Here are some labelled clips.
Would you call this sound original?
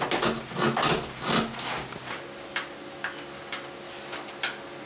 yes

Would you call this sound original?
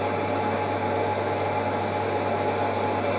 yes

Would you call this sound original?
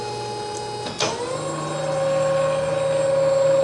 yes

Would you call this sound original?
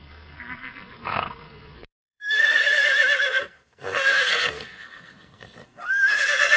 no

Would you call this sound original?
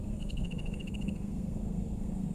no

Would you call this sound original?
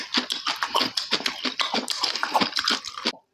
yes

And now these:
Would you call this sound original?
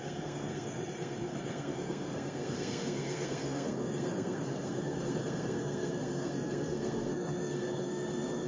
no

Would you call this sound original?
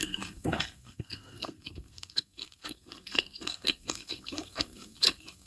no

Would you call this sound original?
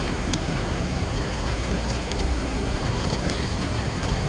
no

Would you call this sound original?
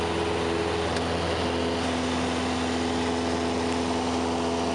yes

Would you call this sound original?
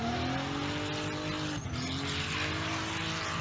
yes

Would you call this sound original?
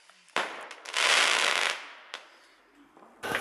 yes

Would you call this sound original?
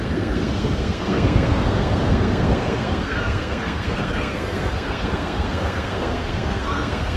no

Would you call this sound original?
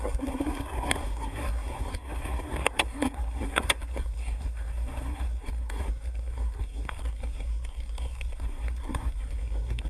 no